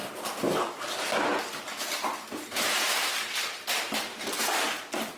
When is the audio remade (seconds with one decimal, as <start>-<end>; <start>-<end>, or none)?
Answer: 0.0-1.3; 4.4-5.2